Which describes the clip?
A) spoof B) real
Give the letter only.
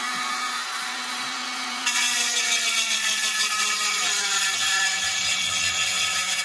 A